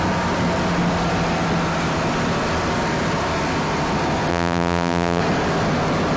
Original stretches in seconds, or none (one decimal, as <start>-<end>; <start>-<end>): 0.0-4.3; 5.2-6.2